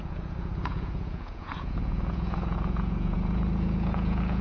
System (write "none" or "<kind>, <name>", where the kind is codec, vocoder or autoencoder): vocoder, Vocos